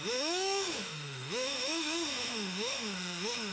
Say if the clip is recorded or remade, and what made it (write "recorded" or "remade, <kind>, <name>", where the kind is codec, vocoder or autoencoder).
remade, autoencoder, DAC-VAE